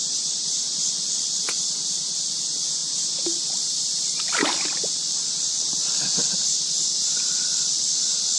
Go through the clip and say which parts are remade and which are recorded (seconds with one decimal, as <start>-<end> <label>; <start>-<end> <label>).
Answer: 0.0-2.8 recorded; 2.8-3.8 remade; 3.8-8.4 recorded